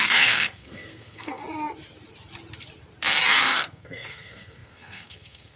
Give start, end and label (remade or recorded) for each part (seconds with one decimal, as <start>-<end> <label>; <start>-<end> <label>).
0.0-1.4 remade; 1.4-3.4 recorded; 3.4-5.6 remade